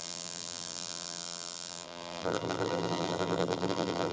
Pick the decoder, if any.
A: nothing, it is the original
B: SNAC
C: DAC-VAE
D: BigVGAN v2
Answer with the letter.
D